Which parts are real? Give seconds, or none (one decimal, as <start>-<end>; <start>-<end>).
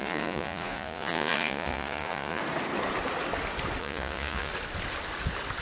2.4-3.8; 4.5-5.6